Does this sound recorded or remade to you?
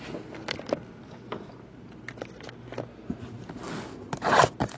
recorded